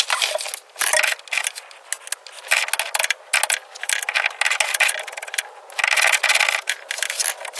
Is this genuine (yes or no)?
yes